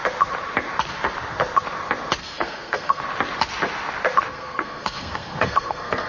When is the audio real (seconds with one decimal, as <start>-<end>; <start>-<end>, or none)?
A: 0.0-2.2; 3.0-4.3